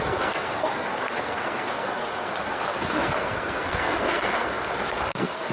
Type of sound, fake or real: fake